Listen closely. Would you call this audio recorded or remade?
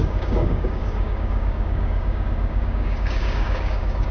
remade